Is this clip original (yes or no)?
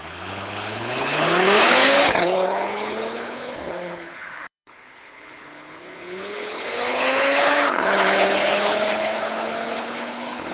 no